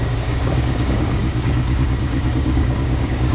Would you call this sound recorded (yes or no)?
no